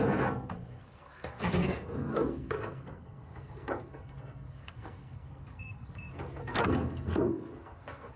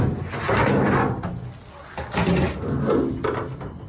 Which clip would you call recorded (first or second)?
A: second